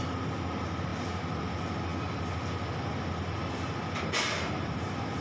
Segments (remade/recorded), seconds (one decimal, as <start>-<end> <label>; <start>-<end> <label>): 0.0-1.9 recorded; 1.9-5.2 remade